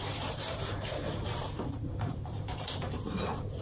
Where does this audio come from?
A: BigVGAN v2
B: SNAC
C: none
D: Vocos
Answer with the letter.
A